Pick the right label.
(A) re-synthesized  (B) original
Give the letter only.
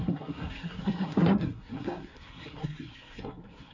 A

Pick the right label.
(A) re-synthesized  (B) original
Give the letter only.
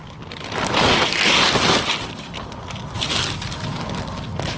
B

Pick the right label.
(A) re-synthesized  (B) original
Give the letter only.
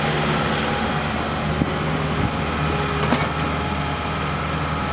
B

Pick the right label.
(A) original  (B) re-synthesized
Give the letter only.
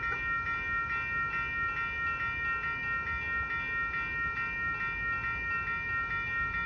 A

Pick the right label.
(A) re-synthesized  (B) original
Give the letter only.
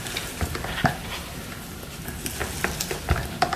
B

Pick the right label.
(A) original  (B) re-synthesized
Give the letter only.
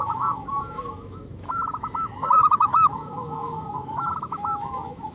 B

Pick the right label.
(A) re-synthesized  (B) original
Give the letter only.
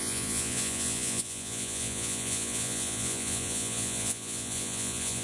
A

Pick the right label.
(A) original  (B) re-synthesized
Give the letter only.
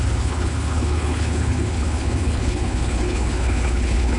B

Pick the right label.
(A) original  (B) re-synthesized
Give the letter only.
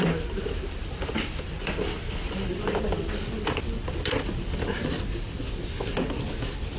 A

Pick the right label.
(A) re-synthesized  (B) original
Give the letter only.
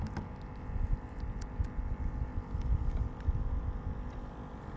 B